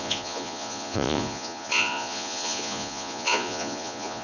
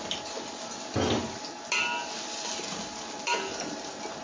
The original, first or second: second